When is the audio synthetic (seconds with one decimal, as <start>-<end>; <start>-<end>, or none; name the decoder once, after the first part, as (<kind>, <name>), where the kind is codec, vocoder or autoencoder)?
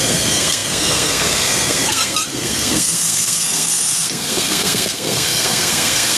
0.0-6.2 (codec, SNAC)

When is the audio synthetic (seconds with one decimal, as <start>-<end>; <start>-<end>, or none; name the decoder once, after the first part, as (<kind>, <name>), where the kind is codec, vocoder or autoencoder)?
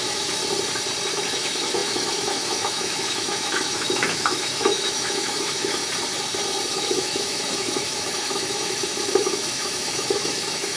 0.0-0.4 (autoencoder, DAC-VAE); 1.1-5.8; 6.7-10.8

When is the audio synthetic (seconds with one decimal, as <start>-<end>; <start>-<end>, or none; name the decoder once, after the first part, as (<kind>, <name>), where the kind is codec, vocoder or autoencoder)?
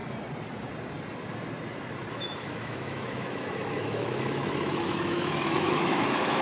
2.1-6.4 (autoencoder, DAC-VAE)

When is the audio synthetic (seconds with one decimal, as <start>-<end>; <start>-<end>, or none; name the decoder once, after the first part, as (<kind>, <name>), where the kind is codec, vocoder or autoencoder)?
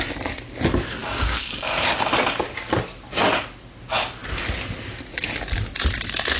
1.0-1.7 (codec, DAC)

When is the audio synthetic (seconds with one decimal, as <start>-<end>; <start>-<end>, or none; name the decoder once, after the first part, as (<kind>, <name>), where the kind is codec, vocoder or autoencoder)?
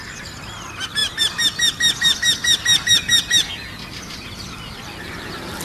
0.0-1.0 (vocoder, BigVGAN v2); 3.5-5.6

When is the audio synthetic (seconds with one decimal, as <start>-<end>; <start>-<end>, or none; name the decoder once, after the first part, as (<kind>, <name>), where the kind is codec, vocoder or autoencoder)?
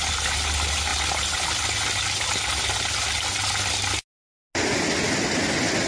none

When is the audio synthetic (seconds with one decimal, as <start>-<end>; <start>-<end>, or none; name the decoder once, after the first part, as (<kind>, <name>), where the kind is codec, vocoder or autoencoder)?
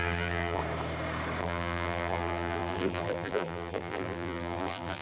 0.0-0.6 (vocoder, BigVGAN v2); 1.4-5.0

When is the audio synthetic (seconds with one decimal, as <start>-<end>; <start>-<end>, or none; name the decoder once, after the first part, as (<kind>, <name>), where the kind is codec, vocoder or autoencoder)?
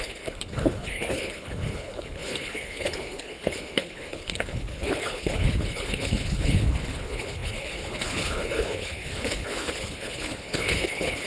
0.0-11.3 (codec, HILCodec)